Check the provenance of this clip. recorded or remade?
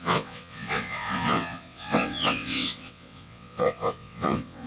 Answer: remade